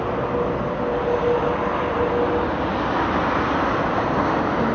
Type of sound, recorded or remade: recorded